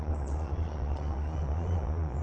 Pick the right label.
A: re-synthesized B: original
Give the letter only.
A